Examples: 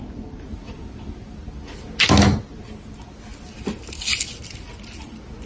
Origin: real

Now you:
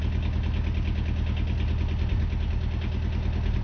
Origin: real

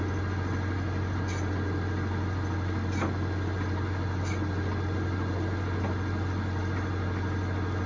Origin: real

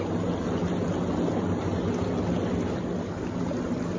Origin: real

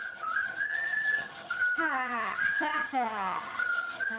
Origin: fake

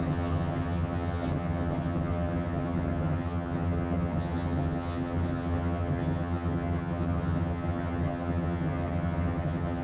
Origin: fake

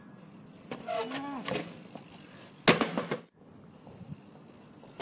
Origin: real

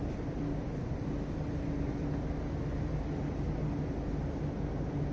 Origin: real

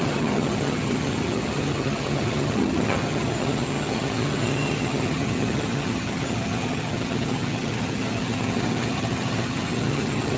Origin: fake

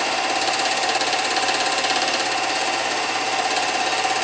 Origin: real